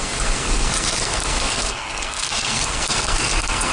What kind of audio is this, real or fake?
fake